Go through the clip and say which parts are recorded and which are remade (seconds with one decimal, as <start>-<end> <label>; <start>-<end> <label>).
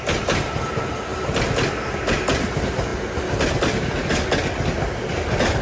0.0-5.6 recorded